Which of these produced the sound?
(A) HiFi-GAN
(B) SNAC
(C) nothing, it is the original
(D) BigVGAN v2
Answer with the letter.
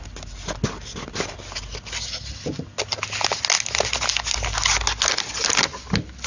C